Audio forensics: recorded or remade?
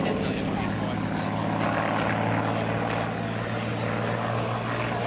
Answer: recorded